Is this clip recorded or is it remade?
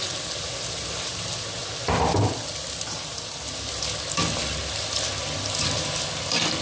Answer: recorded